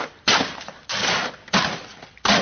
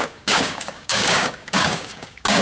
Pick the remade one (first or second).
second